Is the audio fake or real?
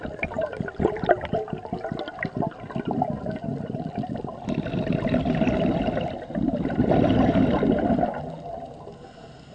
real